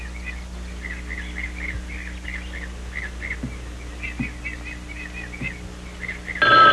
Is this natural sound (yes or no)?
yes